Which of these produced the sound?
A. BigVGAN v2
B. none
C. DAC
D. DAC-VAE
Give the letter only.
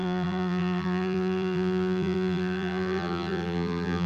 A